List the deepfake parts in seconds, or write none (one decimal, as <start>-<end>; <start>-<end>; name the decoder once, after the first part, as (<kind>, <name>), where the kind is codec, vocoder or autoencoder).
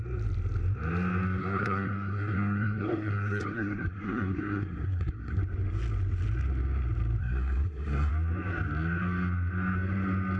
1.4-5.4 (codec, SNAC); 7.2-8.1